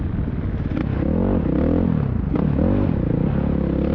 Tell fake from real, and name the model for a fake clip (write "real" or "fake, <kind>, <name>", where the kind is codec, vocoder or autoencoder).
real